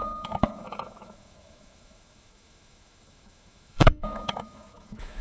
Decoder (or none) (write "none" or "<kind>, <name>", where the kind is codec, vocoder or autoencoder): autoencoder, DAC-VAE